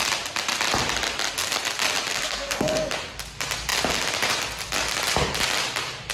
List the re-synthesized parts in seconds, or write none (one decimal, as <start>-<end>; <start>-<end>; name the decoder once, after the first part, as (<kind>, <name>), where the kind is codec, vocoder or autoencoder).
2.1-2.9 (codec, SNAC)